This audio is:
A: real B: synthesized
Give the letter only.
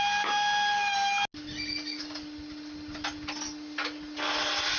A